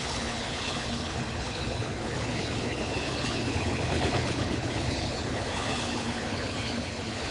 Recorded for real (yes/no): no